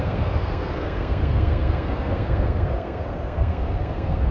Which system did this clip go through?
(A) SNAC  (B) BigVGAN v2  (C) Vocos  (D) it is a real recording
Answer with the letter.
A